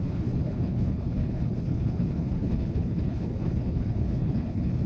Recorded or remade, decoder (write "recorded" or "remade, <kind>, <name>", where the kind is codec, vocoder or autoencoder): remade, codec, HILCodec